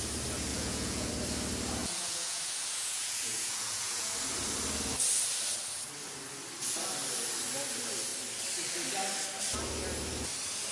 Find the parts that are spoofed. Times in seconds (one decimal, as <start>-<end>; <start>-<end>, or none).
0.5-1.1; 1.8-4.1